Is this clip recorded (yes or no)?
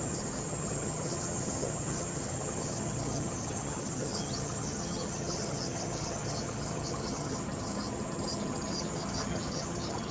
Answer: no